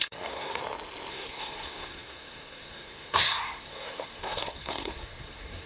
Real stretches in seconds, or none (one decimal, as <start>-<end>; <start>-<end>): 0.6-1.1